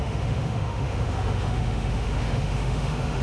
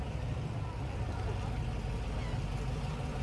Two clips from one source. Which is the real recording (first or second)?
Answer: second